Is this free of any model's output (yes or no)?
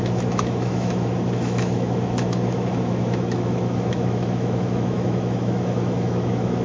no